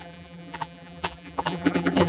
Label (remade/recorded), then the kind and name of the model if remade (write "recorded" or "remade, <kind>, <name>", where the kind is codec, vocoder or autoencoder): remade, vocoder, BigVGAN v2